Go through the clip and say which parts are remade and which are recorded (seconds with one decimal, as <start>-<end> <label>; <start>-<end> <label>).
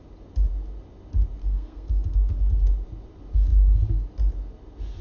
0.0-1.4 recorded; 1.4-2.7 remade; 2.7-5.0 recorded